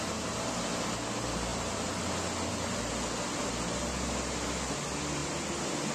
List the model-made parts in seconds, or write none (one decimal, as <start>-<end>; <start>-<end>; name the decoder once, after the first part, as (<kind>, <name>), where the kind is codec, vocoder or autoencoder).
1.5-2.0 (vocoder, BigVGAN v2)